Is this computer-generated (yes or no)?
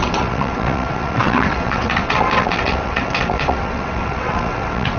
yes